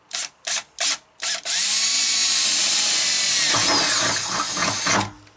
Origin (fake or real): real